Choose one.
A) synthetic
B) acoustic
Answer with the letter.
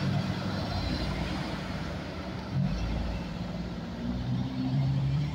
A